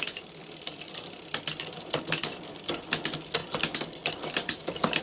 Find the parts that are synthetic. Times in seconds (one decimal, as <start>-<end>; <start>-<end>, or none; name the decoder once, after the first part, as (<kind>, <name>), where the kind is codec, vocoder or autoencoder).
0.4-2.0 (vocoder, BigVGAN v2); 3.4-5.0